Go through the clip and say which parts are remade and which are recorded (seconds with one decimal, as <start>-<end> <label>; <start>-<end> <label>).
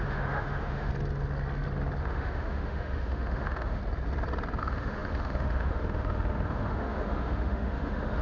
0.0-0.9 remade; 0.9-2.0 recorded; 2.0-3.8 remade; 3.8-4.6 recorded; 4.6-8.2 remade